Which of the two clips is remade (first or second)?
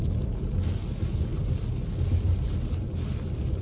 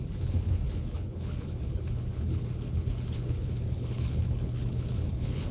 second